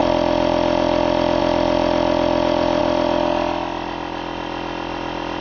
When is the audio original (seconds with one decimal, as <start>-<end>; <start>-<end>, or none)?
0.0-5.4